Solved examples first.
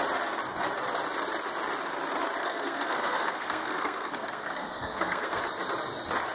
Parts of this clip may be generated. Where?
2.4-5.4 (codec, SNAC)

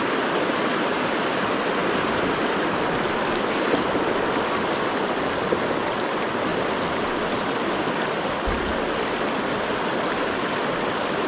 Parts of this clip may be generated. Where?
1.8-3.4 (vocoder, BigVGAN v2); 6.5-7.7; 8.7-9.5

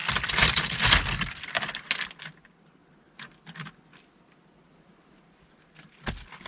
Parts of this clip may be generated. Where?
none

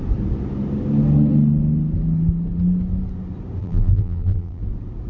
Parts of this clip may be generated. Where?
3.6-4.6 (vocoder, BigVGAN v2)

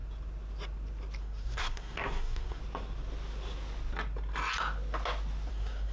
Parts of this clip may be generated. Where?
1.2-2.6 (codec, SNAC); 5.5-5.9

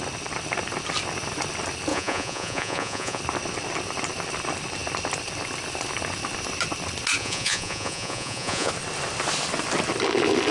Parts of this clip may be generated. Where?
1.9-3.2 (vocoder, Vocos); 7.2-8.7

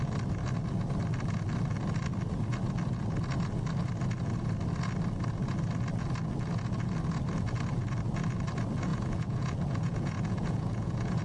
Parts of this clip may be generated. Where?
8.9-11.2 (vocoder, Vocos)

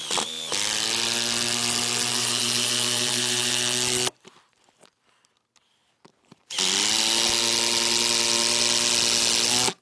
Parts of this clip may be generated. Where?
2.1-3.6 (vocoder, BigVGAN v2)